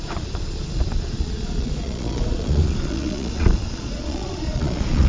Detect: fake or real fake